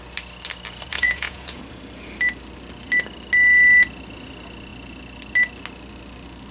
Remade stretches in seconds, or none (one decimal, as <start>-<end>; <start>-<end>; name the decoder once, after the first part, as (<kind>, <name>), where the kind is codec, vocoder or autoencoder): 0.9-1.6 (vocoder, Vocos)